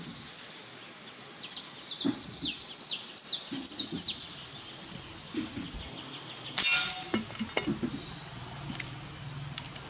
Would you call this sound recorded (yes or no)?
yes